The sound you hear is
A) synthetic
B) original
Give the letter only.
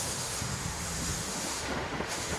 A